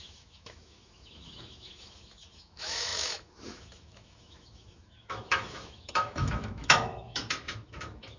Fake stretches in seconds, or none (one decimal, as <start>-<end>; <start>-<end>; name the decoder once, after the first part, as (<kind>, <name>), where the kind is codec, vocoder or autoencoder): 0.0-8.2 (autoencoder, DAC-VAE)

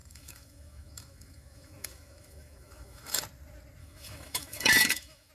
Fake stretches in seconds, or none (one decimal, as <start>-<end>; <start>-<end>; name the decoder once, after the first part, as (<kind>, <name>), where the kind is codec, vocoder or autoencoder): 0.0-3.2 (autoencoder, DAC-VAE); 3.8-5.3

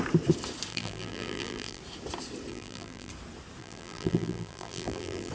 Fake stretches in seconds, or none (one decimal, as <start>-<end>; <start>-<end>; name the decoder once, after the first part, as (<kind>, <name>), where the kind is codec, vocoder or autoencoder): 0.7-1.8 (vocoder, BigVGAN v2); 2.5-3.1; 3.6-5.3